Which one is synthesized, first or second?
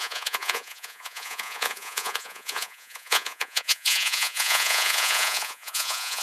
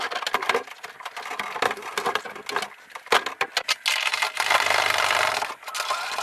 first